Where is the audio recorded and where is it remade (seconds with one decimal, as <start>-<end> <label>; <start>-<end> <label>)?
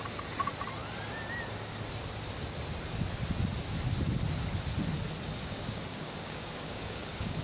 0.0-5.4 recorded; 5.4-7.4 remade